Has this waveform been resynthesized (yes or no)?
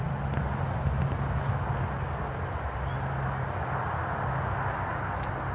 no